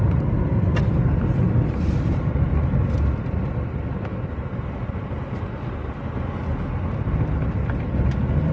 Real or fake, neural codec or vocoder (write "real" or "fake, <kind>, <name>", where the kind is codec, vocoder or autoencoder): real